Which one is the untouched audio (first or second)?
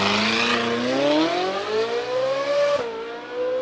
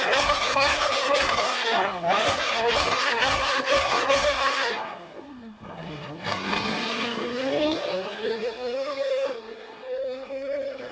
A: first